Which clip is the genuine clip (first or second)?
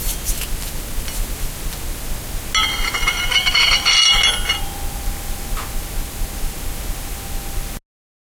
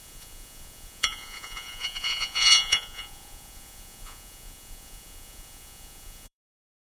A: first